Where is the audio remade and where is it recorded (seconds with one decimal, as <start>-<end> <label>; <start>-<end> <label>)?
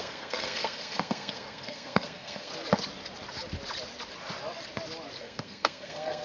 0.0-2.5 remade; 2.5-5.2 recorded; 5.2-6.2 remade